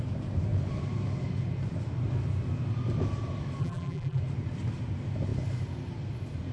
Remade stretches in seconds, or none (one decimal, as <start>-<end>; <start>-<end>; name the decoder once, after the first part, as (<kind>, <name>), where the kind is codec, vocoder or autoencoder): 3.6-4.2 (vocoder, BigVGAN v2)